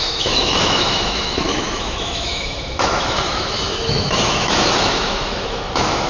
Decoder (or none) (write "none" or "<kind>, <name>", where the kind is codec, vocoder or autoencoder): autoencoder, DAC-VAE